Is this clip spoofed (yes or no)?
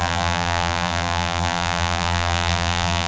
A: yes